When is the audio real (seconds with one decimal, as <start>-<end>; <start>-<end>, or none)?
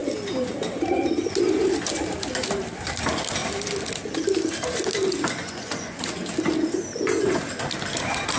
0.0-5.4; 6.0-8.4